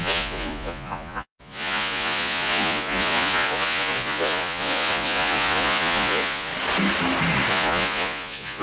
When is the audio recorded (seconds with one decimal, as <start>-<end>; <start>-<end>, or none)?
6.5-7.5